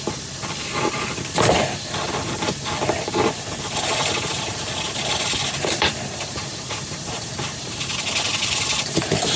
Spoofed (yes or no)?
no